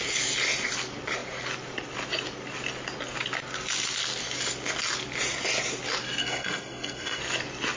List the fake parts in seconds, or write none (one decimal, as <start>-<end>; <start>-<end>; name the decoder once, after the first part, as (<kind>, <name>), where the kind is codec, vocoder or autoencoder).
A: 6.2-7.2 (codec, SNAC)